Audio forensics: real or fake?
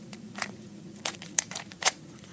fake